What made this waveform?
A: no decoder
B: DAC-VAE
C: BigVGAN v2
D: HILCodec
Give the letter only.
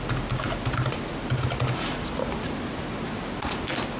A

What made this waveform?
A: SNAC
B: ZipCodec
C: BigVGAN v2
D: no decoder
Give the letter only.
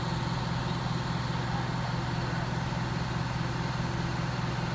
D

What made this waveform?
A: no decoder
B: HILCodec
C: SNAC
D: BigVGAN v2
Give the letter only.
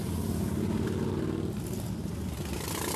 A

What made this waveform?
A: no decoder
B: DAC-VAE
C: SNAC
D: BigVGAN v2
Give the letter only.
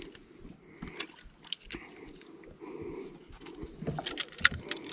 A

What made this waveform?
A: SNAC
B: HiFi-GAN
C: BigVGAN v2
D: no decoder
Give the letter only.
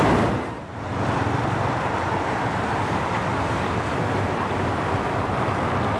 C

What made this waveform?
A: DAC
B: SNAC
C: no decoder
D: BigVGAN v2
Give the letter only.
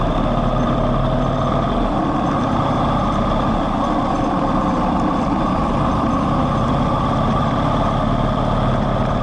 D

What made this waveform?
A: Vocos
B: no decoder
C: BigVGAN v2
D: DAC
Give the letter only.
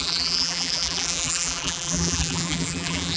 C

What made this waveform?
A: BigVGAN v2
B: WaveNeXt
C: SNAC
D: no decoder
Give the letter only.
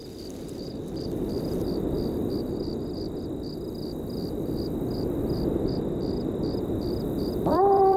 D